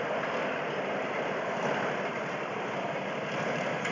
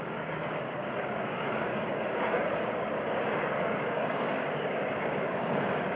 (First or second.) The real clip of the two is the first